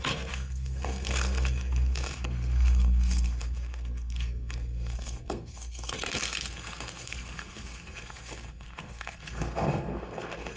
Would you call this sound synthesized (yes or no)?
yes